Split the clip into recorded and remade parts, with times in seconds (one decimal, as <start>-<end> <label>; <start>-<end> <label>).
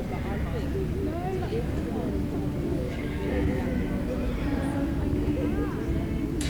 0.0-1.5 recorded; 1.5-2.1 remade; 2.1-2.7 recorded; 2.7-3.6 remade; 3.6-4.7 recorded; 4.7-5.3 remade; 5.3-6.5 recorded